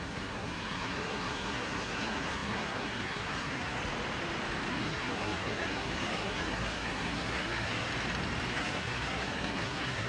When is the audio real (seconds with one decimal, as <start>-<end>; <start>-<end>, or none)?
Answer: 3.8-4.7; 7.9-8.5